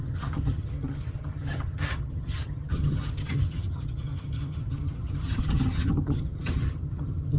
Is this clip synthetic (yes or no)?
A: yes